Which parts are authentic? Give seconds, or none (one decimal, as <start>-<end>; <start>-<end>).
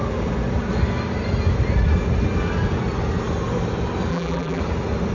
0.0-4.1; 4.6-5.1